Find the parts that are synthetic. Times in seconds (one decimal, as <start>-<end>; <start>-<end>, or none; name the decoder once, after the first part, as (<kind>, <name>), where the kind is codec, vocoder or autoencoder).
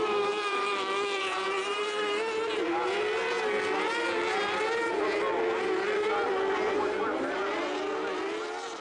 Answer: 0.0-1.2 (autoencoder, DAC-VAE)